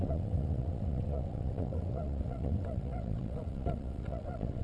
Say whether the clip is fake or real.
fake